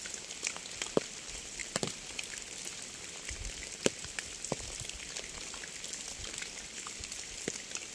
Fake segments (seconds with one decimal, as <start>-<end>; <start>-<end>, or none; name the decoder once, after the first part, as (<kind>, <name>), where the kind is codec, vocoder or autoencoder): none